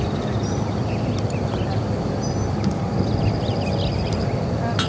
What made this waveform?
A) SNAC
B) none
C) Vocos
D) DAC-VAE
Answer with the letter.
B